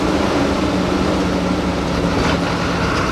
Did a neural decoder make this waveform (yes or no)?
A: no